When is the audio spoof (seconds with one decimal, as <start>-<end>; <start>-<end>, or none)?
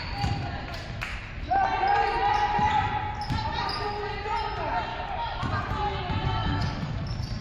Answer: 4.9-5.4; 6.4-6.9